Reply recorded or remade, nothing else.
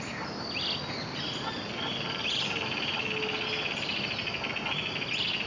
recorded